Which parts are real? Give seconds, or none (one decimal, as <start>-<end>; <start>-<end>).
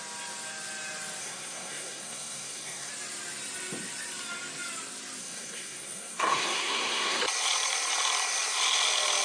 0.0-1.2; 2.9-5.2; 7.2-9.2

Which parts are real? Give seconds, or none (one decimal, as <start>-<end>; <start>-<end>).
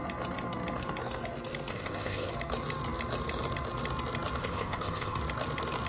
0.0-1.7; 2.3-4.4; 5.2-5.9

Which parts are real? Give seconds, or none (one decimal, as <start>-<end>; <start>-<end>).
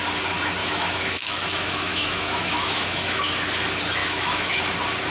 0.0-0.6; 3.2-4.0; 4.6-5.1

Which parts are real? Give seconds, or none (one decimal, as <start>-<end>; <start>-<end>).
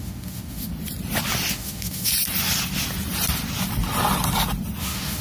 0.7-1.5; 2.1-4.8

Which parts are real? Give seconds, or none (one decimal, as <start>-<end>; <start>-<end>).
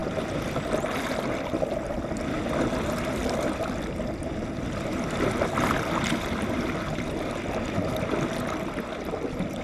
1.2-4.9; 6.6-9.6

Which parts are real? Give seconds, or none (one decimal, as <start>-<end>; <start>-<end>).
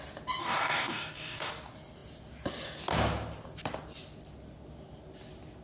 0.0-0.4; 1.5-5.6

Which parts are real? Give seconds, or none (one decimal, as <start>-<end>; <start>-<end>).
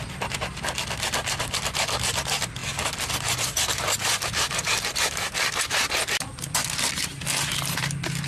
0.0-8.3